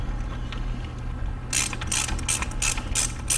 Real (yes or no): yes